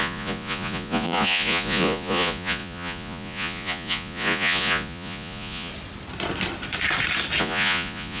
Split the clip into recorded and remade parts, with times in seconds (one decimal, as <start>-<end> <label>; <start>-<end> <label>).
0.0-5.7 remade; 5.7-7.4 recorded; 7.4-8.2 remade